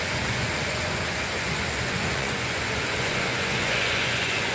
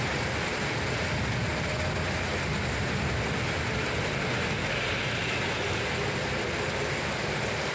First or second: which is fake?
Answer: first